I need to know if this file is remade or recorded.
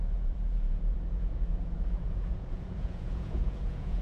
remade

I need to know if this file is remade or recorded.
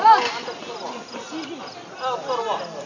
recorded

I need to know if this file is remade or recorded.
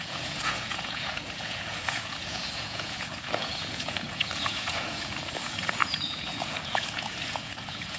remade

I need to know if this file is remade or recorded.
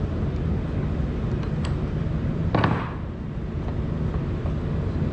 recorded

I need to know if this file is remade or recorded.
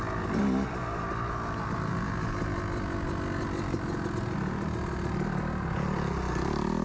recorded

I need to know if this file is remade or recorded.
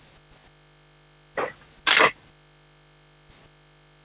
recorded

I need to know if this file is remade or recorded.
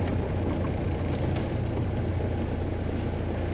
recorded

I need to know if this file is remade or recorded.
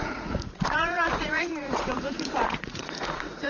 remade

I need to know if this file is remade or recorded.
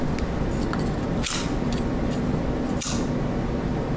recorded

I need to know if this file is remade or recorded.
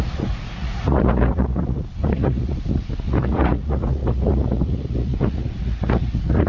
remade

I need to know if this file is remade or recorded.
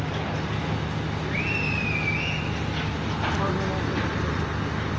recorded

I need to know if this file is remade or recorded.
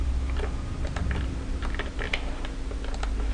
recorded